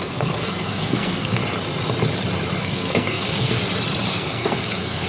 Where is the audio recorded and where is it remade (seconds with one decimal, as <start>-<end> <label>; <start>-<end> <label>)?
0.0-1.4 remade; 1.4-2.6 recorded; 2.6-3.6 remade; 3.6-4.1 recorded; 4.1-5.1 remade

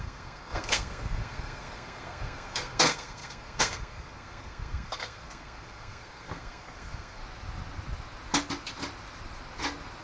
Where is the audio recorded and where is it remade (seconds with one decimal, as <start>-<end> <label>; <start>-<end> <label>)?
0.0-7.2 remade; 7.2-10.0 recorded

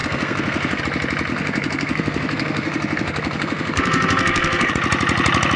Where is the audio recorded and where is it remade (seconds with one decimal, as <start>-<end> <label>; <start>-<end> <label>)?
0.0-0.8 remade; 0.8-1.3 recorded; 1.3-4.7 remade; 4.7-5.6 recorded

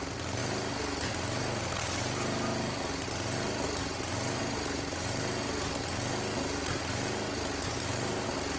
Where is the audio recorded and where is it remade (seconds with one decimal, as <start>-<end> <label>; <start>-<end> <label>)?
0.0-8.6 recorded

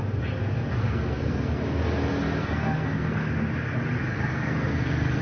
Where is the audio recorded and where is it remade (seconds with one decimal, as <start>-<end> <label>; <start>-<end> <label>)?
0.0-0.8 recorded; 0.8-1.6 remade; 1.6-2.4 recorded; 2.4-3.3 remade; 3.3-4.1 recorded; 4.1-5.2 remade

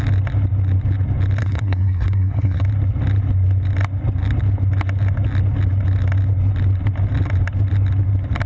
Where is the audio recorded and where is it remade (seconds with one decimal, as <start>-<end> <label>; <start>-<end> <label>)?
0.0-1.4 recorded; 1.4-2.6 remade; 2.6-8.5 recorded

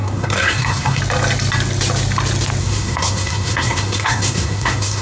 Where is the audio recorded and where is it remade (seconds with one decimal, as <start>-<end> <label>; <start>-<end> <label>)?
0.0-1.0 remade; 1.0-2.6 recorded; 2.6-5.0 remade